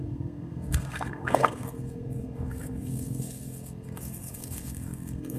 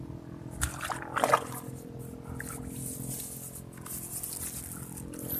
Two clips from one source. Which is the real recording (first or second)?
second